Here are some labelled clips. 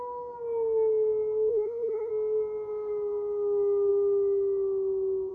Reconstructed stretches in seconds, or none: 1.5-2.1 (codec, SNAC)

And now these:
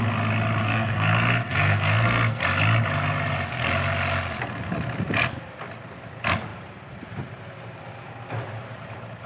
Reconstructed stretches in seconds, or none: 0.6-2.4 (codec, SNAC)

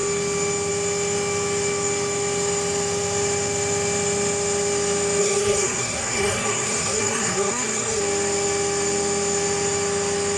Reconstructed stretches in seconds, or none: 5.2-8.0 (codec, SNAC)